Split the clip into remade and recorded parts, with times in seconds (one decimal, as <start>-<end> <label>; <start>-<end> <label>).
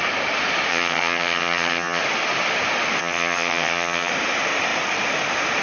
0.0-0.7 recorded; 0.7-2.0 remade; 2.0-3.0 recorded; 3.0-4.1 remade; 4.1-5.6 recorded